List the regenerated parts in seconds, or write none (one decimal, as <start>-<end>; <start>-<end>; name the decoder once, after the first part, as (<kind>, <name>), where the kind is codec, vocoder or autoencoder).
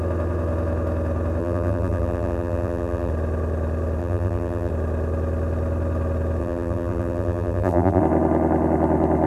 1.4-3.1 (vocoder, BigVGAN v2); 4.0-4.7; 6.4-8.0